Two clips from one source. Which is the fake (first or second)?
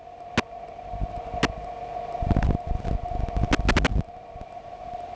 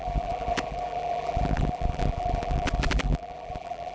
second